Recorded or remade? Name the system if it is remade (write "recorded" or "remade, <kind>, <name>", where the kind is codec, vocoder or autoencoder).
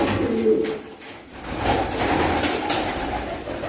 remade, vocoder, BigVGAN v2